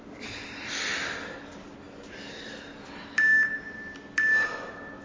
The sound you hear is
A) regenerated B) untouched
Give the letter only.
B